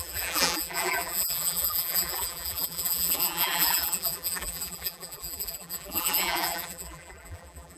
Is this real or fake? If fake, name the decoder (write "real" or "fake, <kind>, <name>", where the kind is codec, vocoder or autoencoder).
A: fake, vocoder, BigVGAN v2